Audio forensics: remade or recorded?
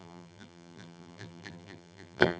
remade